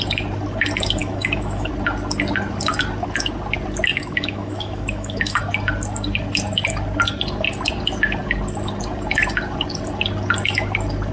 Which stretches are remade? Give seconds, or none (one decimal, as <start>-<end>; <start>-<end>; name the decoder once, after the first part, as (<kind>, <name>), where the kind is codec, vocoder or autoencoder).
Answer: 1.0-1.7 (autoencoder, DAC-VAE); 3.9-5.4